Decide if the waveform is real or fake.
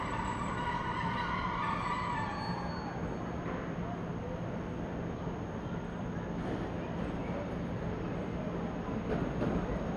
real